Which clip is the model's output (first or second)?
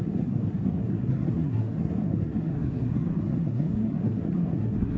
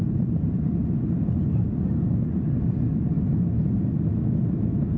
first